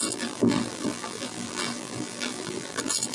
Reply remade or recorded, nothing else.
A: remade